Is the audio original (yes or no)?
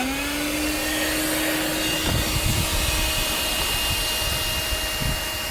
yes